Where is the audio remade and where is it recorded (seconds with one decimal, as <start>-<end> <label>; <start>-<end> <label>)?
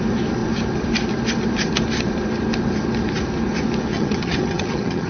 0.0-3.9 recorded; 3.9-5.1 remade